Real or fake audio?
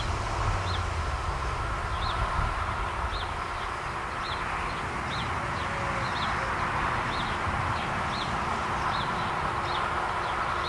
real